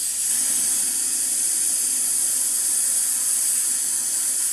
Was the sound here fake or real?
real